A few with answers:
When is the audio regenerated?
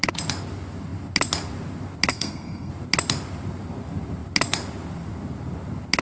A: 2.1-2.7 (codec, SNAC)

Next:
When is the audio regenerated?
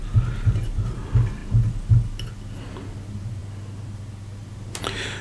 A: none